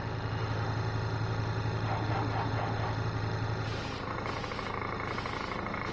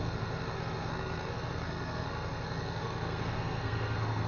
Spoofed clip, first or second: second